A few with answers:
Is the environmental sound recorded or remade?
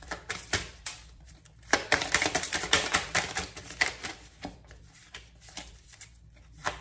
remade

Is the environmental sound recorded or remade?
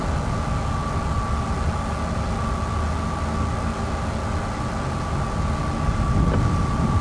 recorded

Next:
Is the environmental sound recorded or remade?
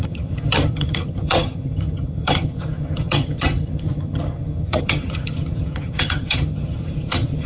remade